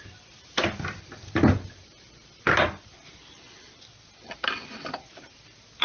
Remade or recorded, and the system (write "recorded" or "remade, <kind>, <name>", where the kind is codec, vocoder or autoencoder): recorded